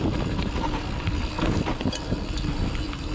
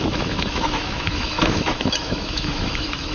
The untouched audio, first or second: first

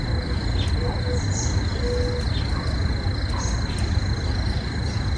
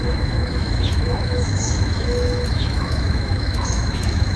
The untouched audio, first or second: first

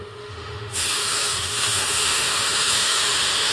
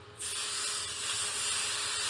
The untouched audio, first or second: second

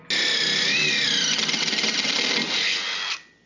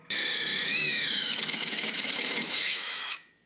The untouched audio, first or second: first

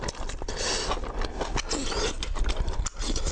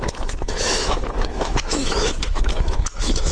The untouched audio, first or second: first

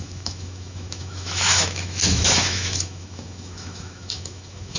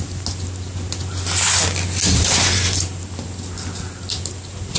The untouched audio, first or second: second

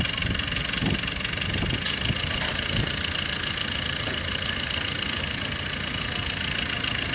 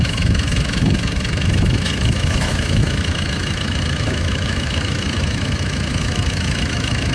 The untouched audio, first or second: first